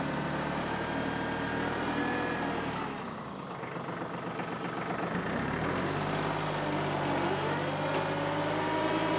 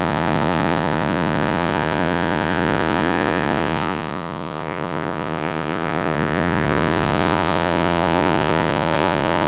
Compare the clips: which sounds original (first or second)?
first